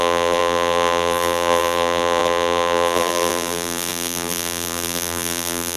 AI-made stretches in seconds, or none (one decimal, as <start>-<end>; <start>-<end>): 0.0-5.8

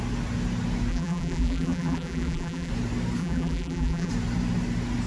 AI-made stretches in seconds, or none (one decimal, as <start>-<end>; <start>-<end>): 0.9-2.7; 3.2-4.1

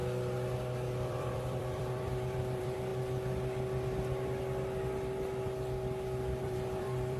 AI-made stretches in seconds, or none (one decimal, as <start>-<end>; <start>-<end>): 1.1-2.9; 6.4-7.2